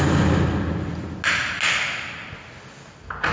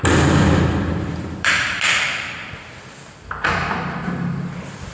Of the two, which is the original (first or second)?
first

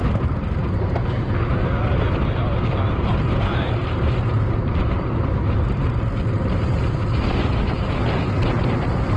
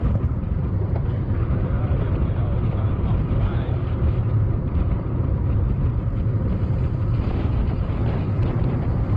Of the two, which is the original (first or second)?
first